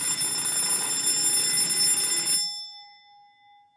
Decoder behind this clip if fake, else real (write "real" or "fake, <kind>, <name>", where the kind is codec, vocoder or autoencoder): real